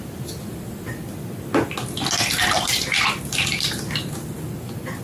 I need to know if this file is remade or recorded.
recorded